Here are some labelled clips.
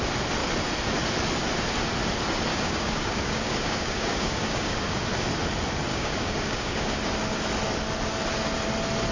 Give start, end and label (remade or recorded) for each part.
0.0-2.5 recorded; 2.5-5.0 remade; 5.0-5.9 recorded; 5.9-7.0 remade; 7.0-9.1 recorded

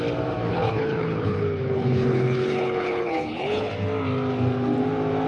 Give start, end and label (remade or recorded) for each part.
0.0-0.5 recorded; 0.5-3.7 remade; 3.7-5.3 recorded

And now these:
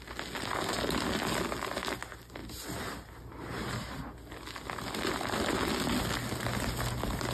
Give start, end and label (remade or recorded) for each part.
0.0-7.3 recorded